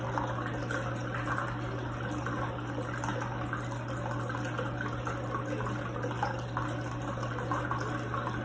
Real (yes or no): yes